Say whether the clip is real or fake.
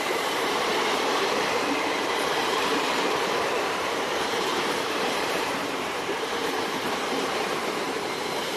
fake